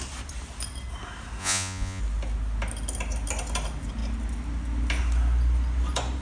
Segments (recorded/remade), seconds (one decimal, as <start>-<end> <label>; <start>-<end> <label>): 0.0-1.4 recorded; 1.4-2.0 remade; 2.0-6.2 recorded

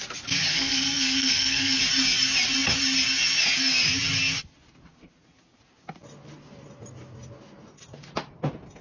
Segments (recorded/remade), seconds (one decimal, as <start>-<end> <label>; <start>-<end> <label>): 0.0-0.5 recorded; 0.5-1.8 remade; 1.8-8.8 recorded

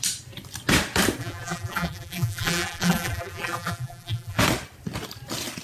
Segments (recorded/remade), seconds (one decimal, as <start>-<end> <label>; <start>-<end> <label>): 0.0-1.2 recorded; 1.2-4.4 remade; 4.4-5.6 recorded

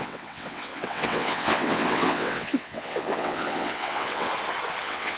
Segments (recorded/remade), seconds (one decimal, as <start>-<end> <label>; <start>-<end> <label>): 0.0-4.3 remade; 4.3-4.8 recorded; 4.8-5.2 remade

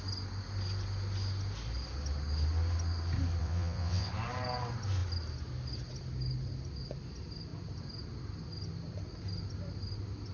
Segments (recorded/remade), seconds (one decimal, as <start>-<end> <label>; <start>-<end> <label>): 0.0-3.4 recorded; 3.4-4.1 remade; 4.1-10.3 recorded

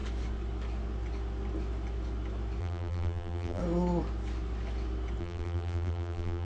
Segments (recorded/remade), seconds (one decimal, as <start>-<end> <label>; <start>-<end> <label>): 0.0-2.6 recorded; 2.6-3.6 remade; 3.6-5.2 recorded; 5.2-6.4 remade

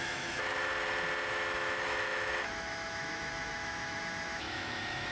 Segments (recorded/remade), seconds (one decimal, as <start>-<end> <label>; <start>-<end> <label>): 0.0-0.7 remade; 0.7-1.3 recorded; 1.3-5.1 remade